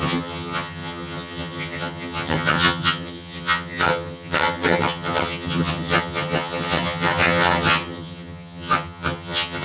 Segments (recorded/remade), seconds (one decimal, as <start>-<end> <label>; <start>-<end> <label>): 0.0-9.6 remade

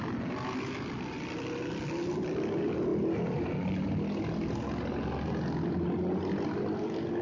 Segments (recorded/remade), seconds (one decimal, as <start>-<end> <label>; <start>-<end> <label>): 0.0-7.2 recorded